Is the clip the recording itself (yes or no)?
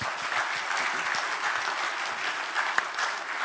yes